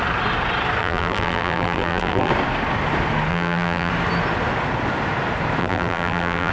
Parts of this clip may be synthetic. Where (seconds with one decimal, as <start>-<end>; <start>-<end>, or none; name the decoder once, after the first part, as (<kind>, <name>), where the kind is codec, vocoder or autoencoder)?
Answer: 0.8-2.3 (vocoder, BigVGAN v2); 3.3-3.9; 5.6-6.5